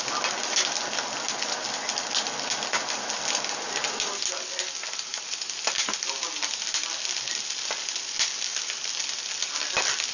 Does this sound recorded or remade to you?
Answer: recorded